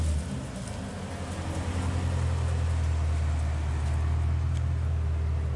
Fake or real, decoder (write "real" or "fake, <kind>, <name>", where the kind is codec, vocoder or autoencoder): real